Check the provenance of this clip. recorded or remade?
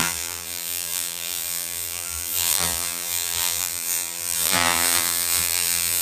remade